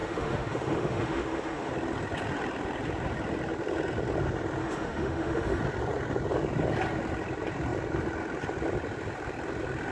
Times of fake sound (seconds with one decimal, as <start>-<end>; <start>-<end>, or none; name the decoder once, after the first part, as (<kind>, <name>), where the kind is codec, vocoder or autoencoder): 0.0-1.7 (autoencoder, DAC-VAE); 4.6-5.6